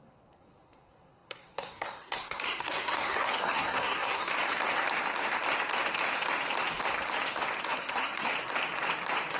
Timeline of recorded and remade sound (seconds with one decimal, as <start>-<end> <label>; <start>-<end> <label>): 0.0-4.3 remade; 4.3-7.7 recorded; 7.7-8.3 remade; 8.3-9.4 recorded